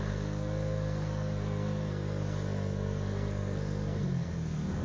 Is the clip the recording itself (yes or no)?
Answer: no